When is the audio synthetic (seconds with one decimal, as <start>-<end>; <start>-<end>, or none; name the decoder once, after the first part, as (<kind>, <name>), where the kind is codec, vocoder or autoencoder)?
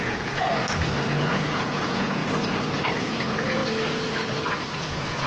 0.0-0.5 (vocoder, Vocos); 1.2-2.2; 2.9-3.6; 4.8-5.3